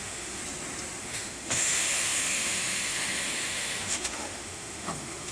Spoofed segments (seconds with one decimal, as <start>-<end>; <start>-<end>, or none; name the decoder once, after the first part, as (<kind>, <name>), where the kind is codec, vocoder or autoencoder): 0.0-0.4 (autoencoder, DAC-VAE); 1.0-5.3